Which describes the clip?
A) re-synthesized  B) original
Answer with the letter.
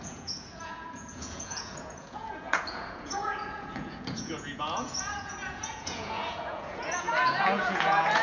A